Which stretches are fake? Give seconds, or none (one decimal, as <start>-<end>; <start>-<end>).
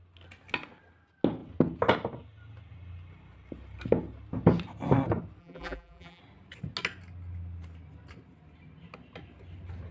5.4-6.2